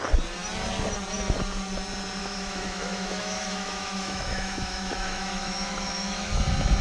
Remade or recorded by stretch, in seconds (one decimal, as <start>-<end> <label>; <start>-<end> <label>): 0.0-2.2 recorded; 2.2-6.3 remade; 6.3-6.8 recorded